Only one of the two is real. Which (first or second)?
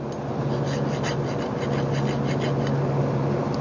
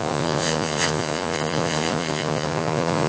first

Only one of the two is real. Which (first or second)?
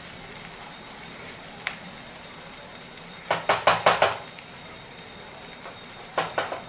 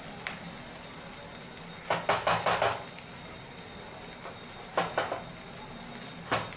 second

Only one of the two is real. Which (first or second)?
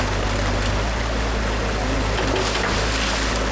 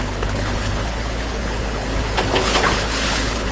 first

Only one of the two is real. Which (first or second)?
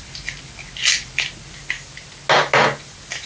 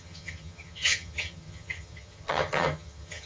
first